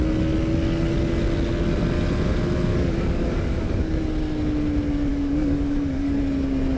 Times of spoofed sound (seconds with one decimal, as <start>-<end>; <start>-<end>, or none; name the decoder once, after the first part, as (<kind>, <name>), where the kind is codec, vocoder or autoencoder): 2.7-4.0 (codec, DAC); 5.1-6.2